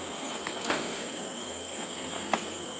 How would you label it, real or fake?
fake